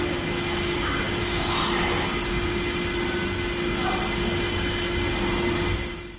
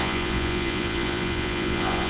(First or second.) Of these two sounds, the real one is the first